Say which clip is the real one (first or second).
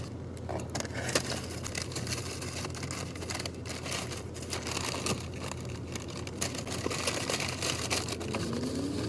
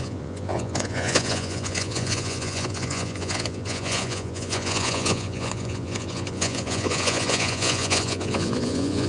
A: first